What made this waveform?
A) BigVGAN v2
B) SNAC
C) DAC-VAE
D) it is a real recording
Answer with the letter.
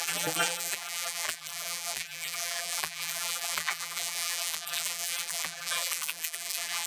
A